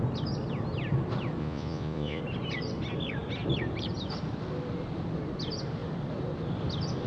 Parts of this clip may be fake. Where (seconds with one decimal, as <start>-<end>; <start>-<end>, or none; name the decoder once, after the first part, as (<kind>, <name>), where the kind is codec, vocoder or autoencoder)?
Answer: 1.4-2.2 (vocoder, Vocos)